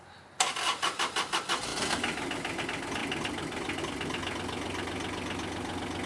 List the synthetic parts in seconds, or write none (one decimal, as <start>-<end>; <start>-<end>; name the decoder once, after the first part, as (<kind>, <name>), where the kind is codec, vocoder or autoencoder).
none